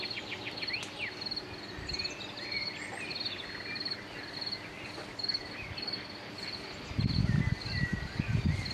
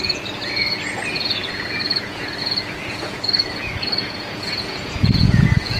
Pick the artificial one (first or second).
second